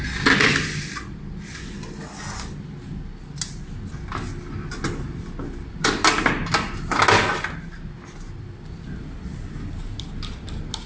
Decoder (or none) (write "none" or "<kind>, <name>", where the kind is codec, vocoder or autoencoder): none